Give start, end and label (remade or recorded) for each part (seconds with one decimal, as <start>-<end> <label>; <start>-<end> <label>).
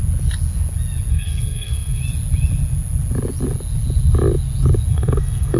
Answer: 0.0-1.1 recorded; 1.1-2.0 remade; 2.0-4.9 recorded; 4.9-5.6 remade